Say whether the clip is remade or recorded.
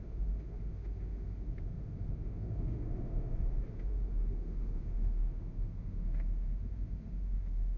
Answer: remade